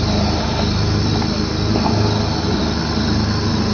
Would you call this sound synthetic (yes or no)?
no